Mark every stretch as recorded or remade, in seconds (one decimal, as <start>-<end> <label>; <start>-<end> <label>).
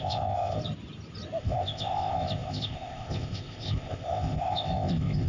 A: 0.0-0.6 remade; 0.6-1.4 recorded; 1.4-5.3 remade